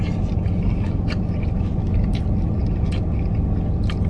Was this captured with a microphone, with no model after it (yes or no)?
yes